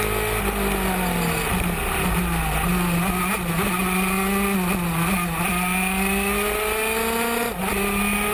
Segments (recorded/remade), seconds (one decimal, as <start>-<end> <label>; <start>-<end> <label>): 0.0-8.3 recorded